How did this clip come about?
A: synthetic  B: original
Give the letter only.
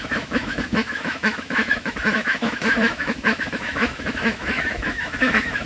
A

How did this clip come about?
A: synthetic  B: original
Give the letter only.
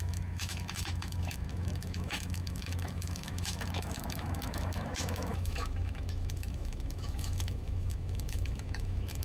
A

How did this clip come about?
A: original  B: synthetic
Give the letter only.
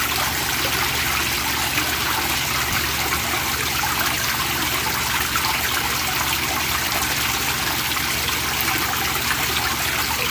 A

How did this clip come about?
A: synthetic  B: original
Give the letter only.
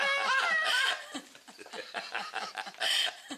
B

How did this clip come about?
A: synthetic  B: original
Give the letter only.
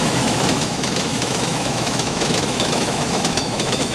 A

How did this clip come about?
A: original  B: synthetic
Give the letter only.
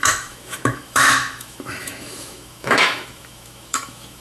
B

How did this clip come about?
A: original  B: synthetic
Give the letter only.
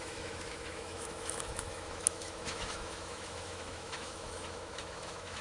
B